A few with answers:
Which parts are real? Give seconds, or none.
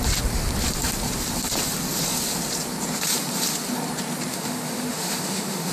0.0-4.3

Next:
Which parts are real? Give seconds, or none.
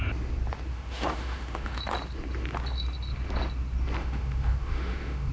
0.0-0.7; 1.8-4.0